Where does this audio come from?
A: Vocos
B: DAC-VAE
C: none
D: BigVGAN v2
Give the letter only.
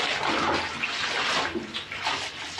C